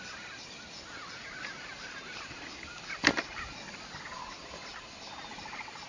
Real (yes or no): no